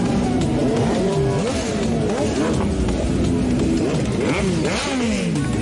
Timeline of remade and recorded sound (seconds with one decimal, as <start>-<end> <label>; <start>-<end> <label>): 0.0-5.6 recorded